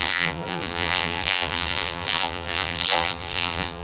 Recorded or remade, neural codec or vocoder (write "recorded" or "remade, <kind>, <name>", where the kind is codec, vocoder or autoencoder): remade, vocoder, BigVGAN v2